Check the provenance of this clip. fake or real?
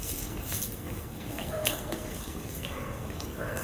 fake